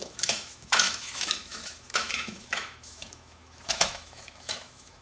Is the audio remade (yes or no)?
yes